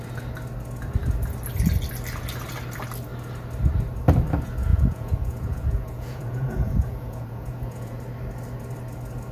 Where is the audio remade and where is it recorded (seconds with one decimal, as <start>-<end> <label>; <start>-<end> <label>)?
0.0-4.7 recorded; 4.7-8.0 remade; 8.0-9.3 recorded

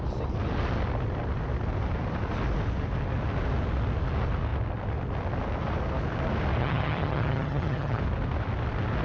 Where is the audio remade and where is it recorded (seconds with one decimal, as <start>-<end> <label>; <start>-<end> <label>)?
0.0-6.6 recorded; 6.6-8.0 remade; 8.0-9.0 recorded

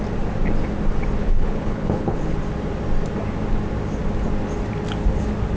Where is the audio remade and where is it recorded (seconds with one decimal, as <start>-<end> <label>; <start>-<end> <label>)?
0.0-1.2 recorded; 1.2-2.4 remade; 2.4-5.6 recorded

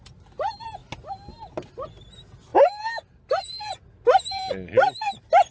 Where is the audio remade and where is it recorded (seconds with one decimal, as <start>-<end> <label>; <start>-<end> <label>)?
0.0-5.5 recorded

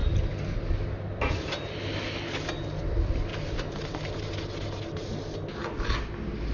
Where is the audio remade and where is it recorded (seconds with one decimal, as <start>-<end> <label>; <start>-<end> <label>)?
0.0-3.3 recorded; 3.3-4.3 remade; 4.3-6.5 recorded

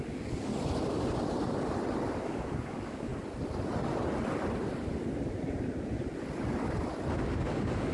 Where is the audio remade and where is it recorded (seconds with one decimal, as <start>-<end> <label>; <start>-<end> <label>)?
0.0-0.5 remade; 0.5-2.2 recorded; 2.2-3.1 remade; 3.1-7.3 recorded; 7.3-7.9 remade

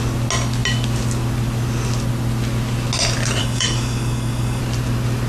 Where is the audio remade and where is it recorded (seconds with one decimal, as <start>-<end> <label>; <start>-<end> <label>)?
0.0-3.4 recorded; 3.4-4.6 remade; 4.6-5.3 recorded

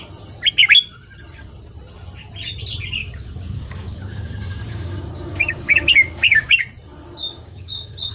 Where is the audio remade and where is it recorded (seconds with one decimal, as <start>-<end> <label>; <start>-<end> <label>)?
0.0-3.0 recorded; 3.0-6.6 remade; 6.6-7.2 recorded; 7.2-8.1 remade